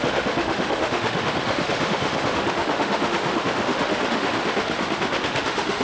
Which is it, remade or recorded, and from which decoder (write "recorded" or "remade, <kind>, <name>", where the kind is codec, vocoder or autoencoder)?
remade, autoencoder, DAC-VAE